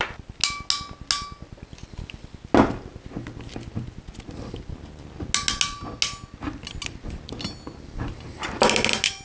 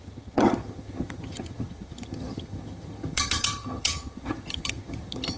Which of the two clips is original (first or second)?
first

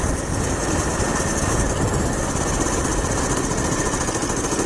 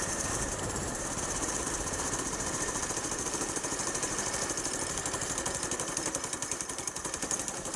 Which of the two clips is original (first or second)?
first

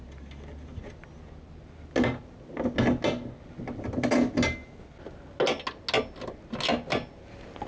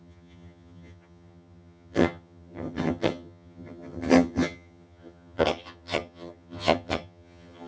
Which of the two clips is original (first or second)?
first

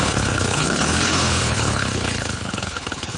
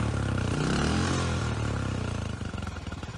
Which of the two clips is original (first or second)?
second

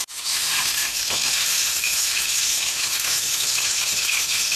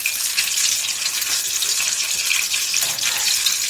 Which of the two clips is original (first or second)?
second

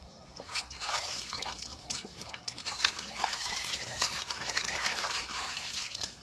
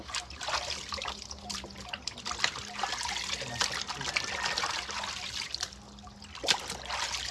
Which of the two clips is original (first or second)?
second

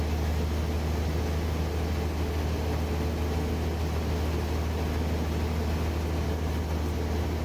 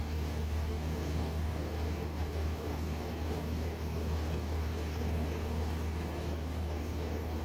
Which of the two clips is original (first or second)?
first